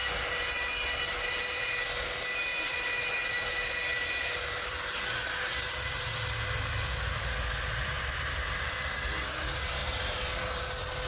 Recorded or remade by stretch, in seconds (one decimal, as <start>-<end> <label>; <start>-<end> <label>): 0.0-1.7 remade; 1.7-2.5 recorded; 2.5-3.4 remade; 3.4-9.8 recorded; 9.8-11.1 remade